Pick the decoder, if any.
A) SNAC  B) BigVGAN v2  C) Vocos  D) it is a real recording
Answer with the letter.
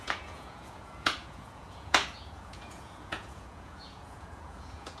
C